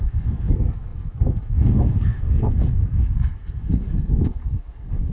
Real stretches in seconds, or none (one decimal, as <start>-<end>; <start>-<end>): none